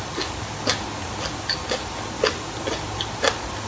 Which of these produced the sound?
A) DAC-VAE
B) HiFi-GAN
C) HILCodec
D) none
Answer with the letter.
D